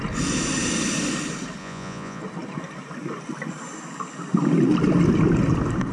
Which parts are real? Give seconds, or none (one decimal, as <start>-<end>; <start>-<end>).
0.0-1.6; 2.2-5.9